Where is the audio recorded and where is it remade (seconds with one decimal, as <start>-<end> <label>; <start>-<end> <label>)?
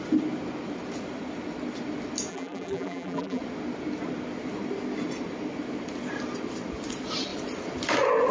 0.0-2.3 recorded; 2.3-3.4 remade; 3.4-8.3 recorded